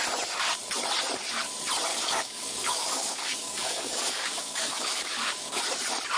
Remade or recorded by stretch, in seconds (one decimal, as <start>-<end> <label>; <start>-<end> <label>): 0.0-1.9 recorded; 1.9-5.6 remade; 5.6-6.2 recorded